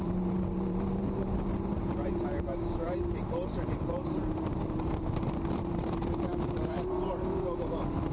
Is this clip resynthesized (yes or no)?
yes